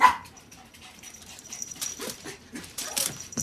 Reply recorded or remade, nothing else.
remade